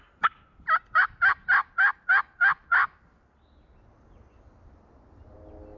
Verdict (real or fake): real